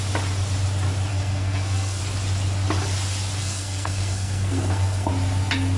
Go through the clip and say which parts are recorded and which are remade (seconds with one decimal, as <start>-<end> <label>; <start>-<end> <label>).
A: 0.0-1.1 recorded; 1.1-2.0 remade; 2.0-3.4 recorded; 3.4-5.1 remade; 5.1-5.8 recorded